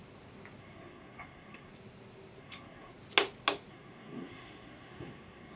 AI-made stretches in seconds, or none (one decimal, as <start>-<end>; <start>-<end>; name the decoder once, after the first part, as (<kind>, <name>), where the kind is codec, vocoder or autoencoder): 0.6-1.7 (codec, SNAC); 2.4-2.9; 3.7-5.6